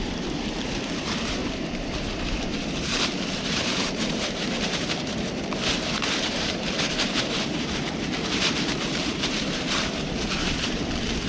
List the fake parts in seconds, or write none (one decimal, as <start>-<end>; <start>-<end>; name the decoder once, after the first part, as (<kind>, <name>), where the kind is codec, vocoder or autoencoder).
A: 0.0-11.3 (vocoder, BigVGAN v2)